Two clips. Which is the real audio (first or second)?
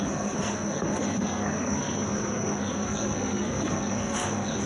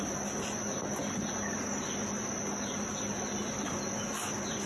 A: second